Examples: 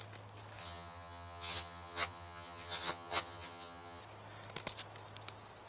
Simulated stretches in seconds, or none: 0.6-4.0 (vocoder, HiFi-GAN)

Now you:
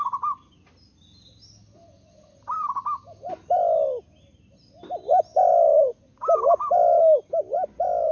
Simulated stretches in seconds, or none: none